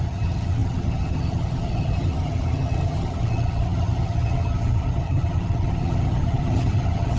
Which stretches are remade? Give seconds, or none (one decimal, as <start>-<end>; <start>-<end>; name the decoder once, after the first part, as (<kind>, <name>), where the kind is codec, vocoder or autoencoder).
0.0-7.2 (vocoder, HiFi-GAN)